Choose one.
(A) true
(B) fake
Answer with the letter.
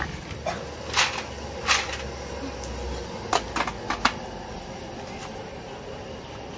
A